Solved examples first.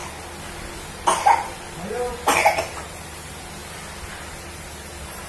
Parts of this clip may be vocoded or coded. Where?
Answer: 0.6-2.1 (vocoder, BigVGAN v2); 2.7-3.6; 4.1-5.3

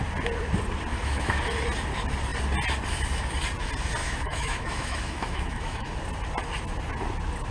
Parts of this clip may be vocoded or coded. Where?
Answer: 0.9-1.4 (autoencoder, DAC-VAE); 4.0-5.9